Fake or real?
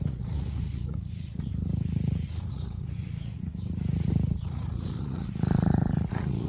fake